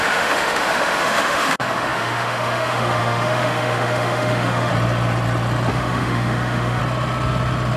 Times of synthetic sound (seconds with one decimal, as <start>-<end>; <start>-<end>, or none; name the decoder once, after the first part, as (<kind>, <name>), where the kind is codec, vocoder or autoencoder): 0.0-4.7 (autoencoder, DAC-VAE); 5.7-6.8